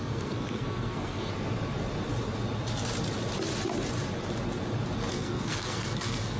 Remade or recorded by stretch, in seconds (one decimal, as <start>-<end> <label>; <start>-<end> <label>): 0.0-1.3 remade; 1.3-5.1 recorded; 5.1-6.4 remade